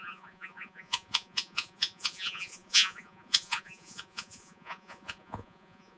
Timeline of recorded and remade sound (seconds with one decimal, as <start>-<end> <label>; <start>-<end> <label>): 0.0-6.0 remade